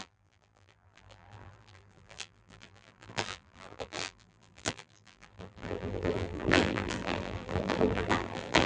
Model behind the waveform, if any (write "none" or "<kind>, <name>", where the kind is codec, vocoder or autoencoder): vocoder, BigVGAN v2